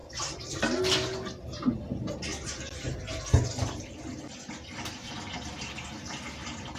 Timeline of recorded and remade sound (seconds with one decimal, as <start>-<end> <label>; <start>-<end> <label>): 0.0-1.7 remade; 1.7-2.3 recorded; 2.3-3.2 remade; 3.2-6.8 recorded